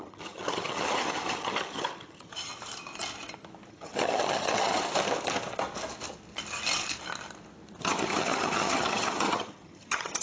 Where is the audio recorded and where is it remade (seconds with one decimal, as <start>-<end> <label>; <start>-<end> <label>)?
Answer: 0.0-2.5 remade; 2.5-3.7 recorded; 3.7-4.8 remade; 4.8-7.8 recorded; 7.8-10.2 remade